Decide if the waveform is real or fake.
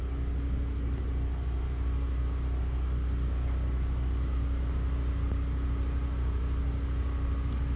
real